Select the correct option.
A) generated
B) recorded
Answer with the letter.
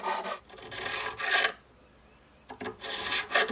A